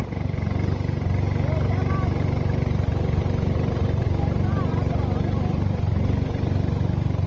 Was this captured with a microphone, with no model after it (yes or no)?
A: yes